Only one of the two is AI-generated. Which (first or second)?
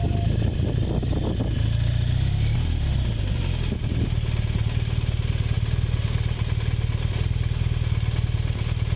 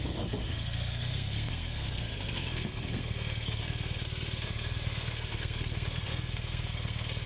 second